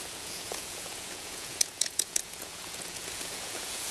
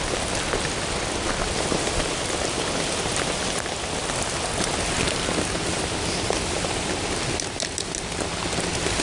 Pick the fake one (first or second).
first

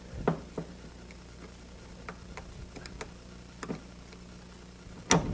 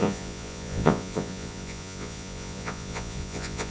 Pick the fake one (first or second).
second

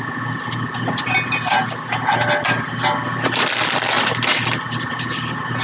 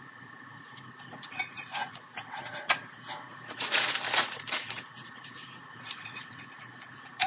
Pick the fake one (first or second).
second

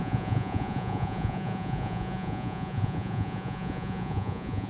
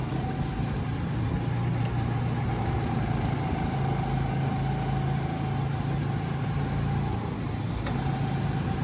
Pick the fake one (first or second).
first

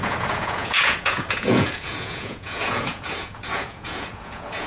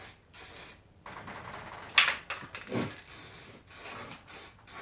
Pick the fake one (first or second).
first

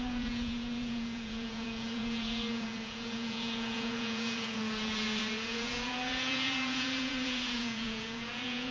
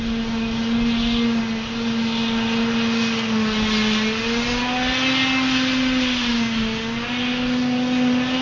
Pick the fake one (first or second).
first